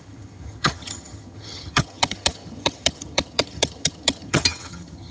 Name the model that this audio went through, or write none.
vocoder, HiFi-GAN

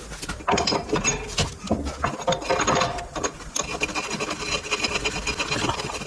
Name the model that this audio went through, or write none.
none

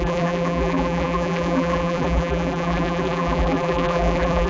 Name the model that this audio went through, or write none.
vocoder, BigVGAN v2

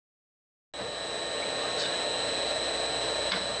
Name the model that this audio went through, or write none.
none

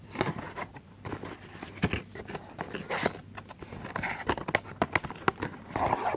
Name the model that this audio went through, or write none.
none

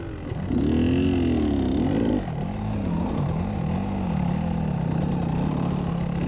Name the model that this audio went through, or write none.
none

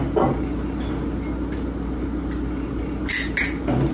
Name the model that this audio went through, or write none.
none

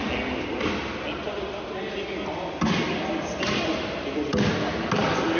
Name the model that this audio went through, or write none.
none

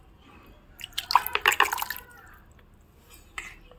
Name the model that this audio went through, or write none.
none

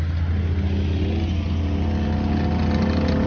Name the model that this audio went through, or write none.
none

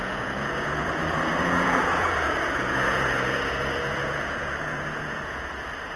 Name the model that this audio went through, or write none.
vocoder, Vocos